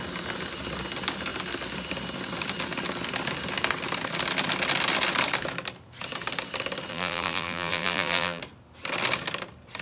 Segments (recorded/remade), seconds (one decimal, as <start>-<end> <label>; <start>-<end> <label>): 0.0-6.9 recorded; 6.9-8.4 remade; 8.4-9.8 recorded